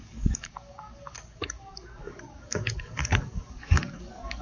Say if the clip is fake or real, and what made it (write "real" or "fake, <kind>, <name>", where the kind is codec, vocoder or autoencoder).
fake, codec, DAC